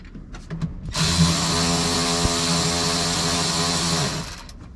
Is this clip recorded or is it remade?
recorded